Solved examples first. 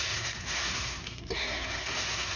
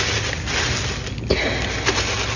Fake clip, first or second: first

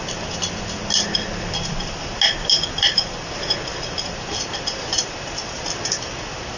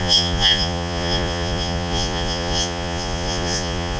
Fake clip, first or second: second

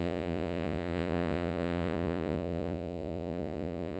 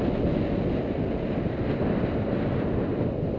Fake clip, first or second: first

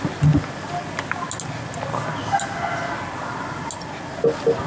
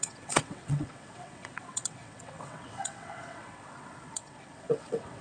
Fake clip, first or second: second